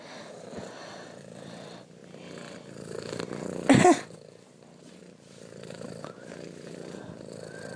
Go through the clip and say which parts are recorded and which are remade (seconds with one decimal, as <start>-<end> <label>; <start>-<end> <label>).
0.0-7.8 recorded